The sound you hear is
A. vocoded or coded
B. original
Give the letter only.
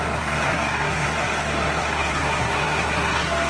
A